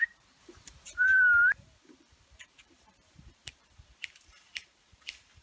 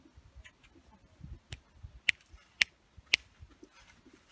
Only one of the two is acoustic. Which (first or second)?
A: second